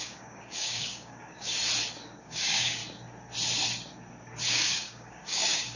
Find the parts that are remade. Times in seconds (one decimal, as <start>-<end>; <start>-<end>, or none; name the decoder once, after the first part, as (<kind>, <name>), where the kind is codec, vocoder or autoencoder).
0.0-1.5 (codec, DAC); 2.2-2.8; 4.5-5.8